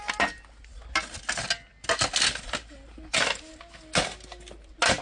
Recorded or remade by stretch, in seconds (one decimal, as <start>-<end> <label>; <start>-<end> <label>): 0.0-5.0 recorded